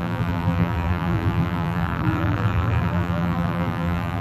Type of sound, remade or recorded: remade